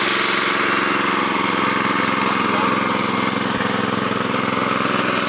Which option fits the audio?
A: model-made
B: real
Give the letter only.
B